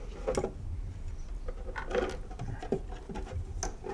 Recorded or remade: recorded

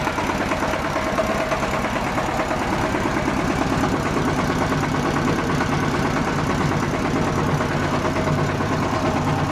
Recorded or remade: recorded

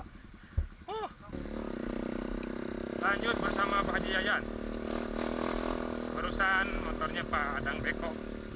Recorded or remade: recorded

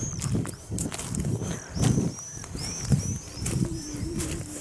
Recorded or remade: recorded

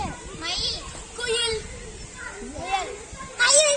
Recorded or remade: recorded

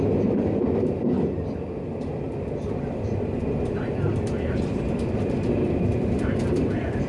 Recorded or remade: remade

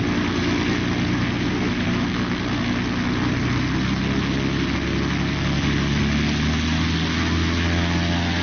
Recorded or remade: recorded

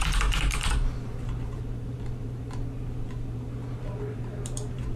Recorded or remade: remade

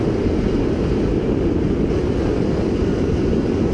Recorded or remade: remade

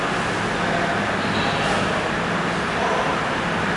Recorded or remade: recorded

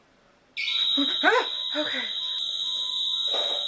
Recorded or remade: recorded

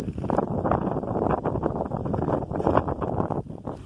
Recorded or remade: recorded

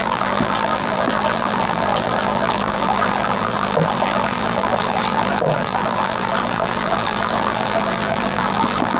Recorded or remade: remade